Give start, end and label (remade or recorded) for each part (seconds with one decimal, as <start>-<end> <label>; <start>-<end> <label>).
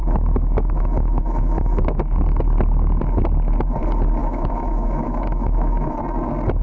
0.0-2.0 remade; 2.0-4.2 recorded; 4.2-6.0 remade; 6.0-6.6 recorded